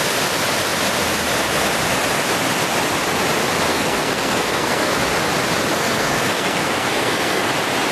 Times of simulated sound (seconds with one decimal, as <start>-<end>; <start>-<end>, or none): 3.7-4.9; 5.7-7.5